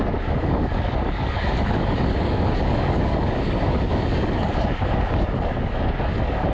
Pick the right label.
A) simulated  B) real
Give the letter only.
A